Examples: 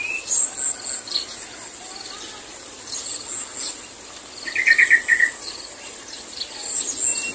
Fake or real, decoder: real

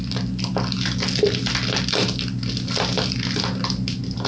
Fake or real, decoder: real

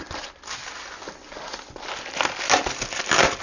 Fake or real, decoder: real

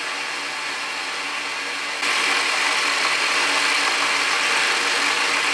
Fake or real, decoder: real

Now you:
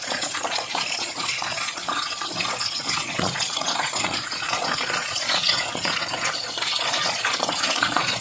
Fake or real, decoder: fake, vocoder, Vocos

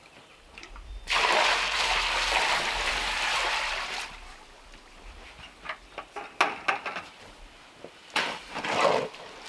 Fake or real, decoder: real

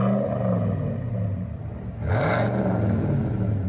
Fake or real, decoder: real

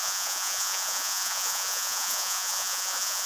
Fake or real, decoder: fake, vocoder, Vocos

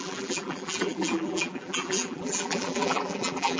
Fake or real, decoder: fake, vocoder, BigVGAN v2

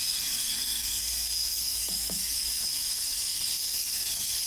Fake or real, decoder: fake, codec, SNAC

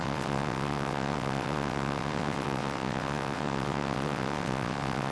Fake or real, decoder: fake, vocoder, WaveNeXt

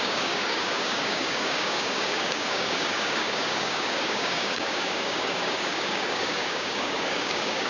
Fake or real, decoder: fake, codec, DAC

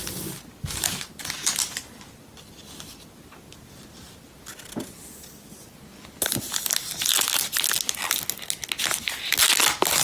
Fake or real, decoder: real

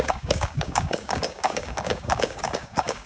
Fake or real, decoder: fake, codec, DAC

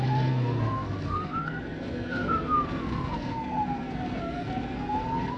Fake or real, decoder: fake, codec, SNAC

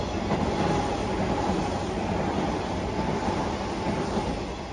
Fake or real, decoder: real